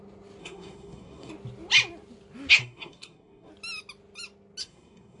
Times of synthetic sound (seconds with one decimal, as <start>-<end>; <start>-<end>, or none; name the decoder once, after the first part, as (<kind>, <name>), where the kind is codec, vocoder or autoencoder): 0.4-1.3 (codec, SNAC); 2.6-3.5; 4.6-5.2